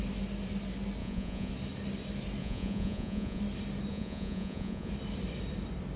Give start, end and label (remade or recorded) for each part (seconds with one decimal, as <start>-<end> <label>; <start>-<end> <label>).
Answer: 0.0-1.0 recorded; 1.0-1.5 remade; 1.5-2.4 recorded; 2.4-3.4 remade; 3.4-3.9 recorded; 3.9-4.9 remade; 4.9-6.0 recorded